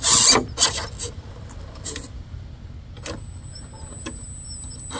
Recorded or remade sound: recorded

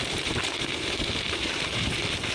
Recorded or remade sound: remade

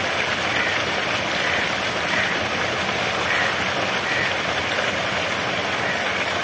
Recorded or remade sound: recorded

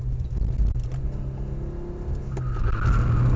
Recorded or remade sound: recorded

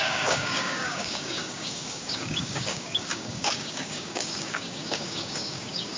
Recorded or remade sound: remade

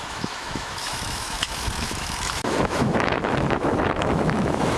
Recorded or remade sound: remade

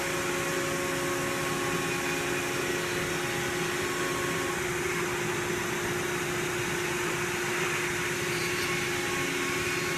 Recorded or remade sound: recorded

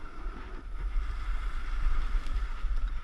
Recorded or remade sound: remade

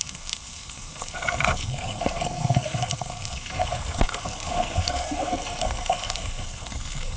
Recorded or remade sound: remade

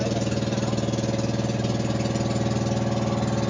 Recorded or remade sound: recorded